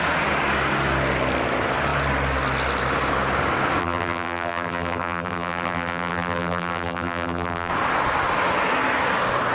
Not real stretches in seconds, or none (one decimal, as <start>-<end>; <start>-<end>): 3.8-7.7

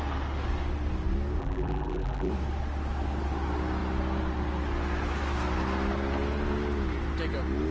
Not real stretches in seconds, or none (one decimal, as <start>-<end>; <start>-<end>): 1.4-2.3

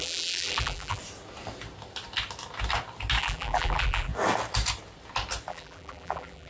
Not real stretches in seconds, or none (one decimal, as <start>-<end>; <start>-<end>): 0.0-1.0; 3.2-4.1; 5.5-6.5

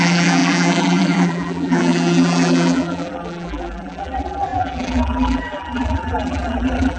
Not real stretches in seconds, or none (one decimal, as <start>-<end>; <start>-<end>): 0.0-7.0

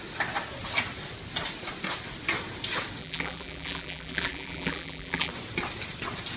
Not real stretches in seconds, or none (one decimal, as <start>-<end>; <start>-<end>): 3.0-5.3

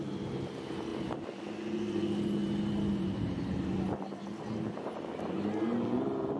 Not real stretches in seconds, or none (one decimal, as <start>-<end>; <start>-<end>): 2.4-3.2